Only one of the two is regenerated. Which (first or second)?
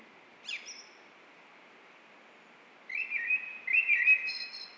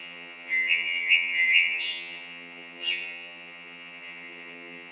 second